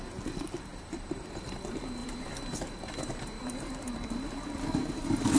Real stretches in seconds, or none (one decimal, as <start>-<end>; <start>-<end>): 0.0-0.7; 1.6-2.0; 3.7-5.4